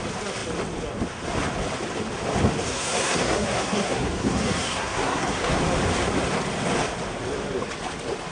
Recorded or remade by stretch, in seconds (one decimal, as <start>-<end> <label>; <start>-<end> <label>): 0.0-2.7 recorded; 2.7-5.6 remade; 5.6-8.3 recorded